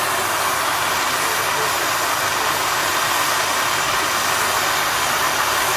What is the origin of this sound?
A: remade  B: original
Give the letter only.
B